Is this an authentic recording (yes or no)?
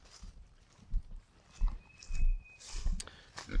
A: yes